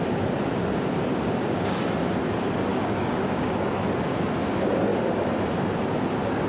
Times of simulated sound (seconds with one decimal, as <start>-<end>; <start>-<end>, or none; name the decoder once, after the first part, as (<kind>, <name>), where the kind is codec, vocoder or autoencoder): 1.1-1.8 (codec, DAC); 2.7-3.7